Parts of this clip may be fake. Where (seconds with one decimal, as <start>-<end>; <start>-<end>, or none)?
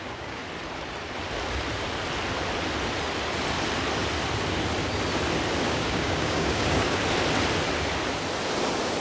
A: 0.0-0.4; 5.6-7.0